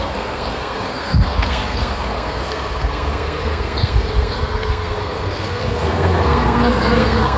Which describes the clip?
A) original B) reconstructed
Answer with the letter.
B